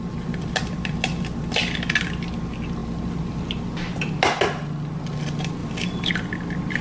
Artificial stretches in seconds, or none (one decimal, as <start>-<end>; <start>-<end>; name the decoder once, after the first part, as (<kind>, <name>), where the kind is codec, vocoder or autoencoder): none